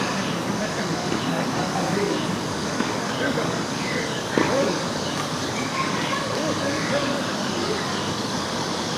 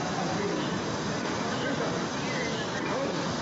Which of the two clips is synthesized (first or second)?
first